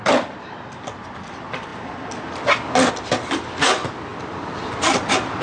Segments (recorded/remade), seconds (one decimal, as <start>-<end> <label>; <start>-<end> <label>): 0.0-5.4 recorded